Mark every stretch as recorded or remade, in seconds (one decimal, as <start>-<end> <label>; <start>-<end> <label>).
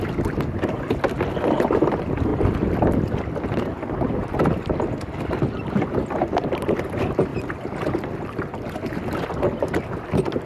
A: 0.0-10.5 recorded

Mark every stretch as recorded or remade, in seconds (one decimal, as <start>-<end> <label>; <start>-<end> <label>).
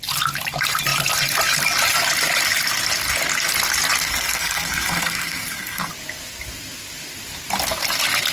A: 0.0-4.0 recorded; 4.0-5.9 remade; 5.9-8.3 recorded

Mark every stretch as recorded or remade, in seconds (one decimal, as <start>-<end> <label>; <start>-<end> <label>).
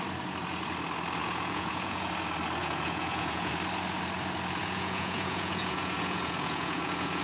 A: 0.0-1.2 recorded; 1.2-2.1 remade; 2.1-2.6 recorded; 2.6-3.5 remade; 3.5-4.6 recorded; 4.6-7.2 remade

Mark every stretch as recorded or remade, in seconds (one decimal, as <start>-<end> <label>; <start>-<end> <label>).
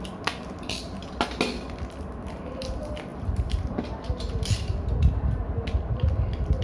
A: 0.0-3.1 recorded; 3.1-3.8 remade; 3.8-6.6 recorded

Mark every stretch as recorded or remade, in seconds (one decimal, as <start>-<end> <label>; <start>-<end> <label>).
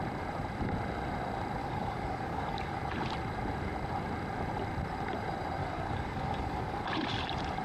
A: 0.0-1.6 recorded; 1.6-2.8 remade; 2.8-5.6 recorded; 5.6-6.8 remade; 6.8-7.6 recorded